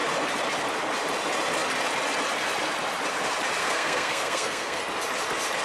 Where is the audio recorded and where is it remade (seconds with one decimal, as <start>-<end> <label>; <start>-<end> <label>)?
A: 0.0-3.6 recorded; 3.6-4.8 remade; 4.8-5.6 recorded